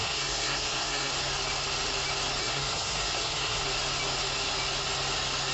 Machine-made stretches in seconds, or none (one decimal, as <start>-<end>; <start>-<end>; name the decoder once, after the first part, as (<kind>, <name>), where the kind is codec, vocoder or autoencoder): 0.0-1.1 (codec, SNAC); 2.4-3.6